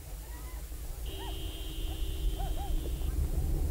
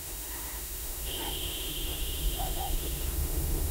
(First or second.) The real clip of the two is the first